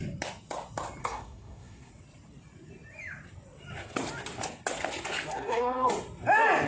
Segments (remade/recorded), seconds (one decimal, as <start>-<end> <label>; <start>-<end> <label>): 0.0-1.0 recorded; 1.0-1.9 remade; 1.9-5.3 recorded; 5.3-5.9 remade; 5.9-6.7 recorded